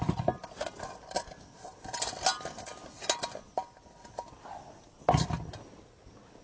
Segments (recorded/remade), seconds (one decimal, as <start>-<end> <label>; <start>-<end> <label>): 0.0-6.4 recorded